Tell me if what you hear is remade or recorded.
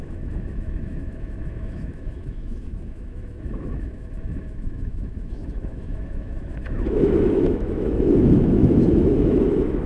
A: remade